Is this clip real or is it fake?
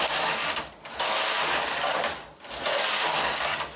real